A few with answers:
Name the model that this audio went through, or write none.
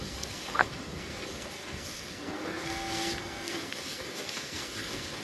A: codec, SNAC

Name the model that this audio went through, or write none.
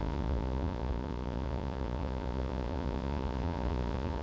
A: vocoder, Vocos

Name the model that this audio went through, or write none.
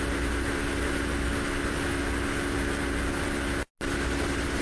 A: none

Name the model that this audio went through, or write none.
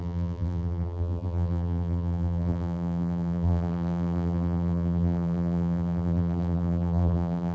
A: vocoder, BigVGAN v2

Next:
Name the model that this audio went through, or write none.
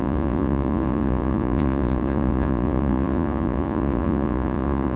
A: vocoder, Vocos